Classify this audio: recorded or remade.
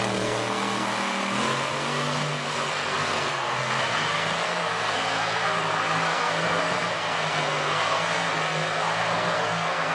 remade